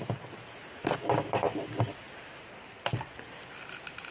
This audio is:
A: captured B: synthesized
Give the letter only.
A